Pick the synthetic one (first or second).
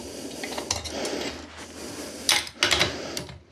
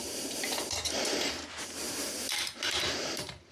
second